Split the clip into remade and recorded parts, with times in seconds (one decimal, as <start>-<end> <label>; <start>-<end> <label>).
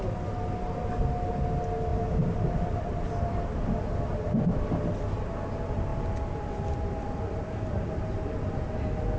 0.0-1.9 recorded; 1.9-4.5 remade; 4.5-9.2 recorded